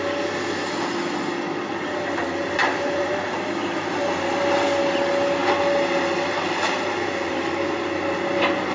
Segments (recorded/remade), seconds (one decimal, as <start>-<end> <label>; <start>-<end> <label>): 0.0-2.6 recorded; 2.6-3.3 remade; 3.3-8.7 recorded